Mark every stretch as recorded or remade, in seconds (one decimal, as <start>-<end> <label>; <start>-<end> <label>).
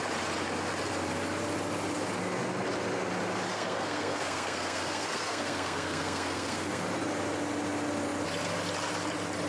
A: 0.0-3.5 recorded; 3.5-6.8 remade; 6.8-9.5 recorded